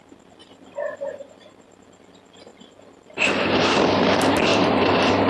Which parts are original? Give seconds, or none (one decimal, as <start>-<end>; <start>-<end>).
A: 0.0-0.4; 1.4-4.5